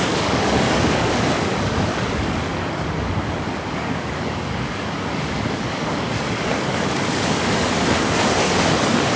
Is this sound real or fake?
fake